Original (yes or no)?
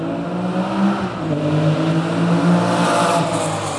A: yes